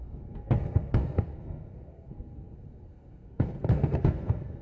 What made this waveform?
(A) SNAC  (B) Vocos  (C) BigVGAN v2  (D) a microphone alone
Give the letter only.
A